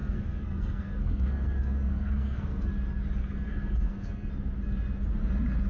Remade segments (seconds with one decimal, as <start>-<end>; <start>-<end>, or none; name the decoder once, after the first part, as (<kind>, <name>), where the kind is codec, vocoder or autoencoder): 0.0-2.7 (codec, SNAC); 3.2-4.3